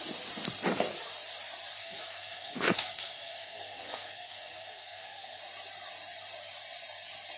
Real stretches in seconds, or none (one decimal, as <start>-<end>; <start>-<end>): 0.0-1.8; 5.4-7.4